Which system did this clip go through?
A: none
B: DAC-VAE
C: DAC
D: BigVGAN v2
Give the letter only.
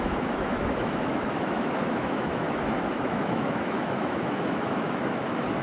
B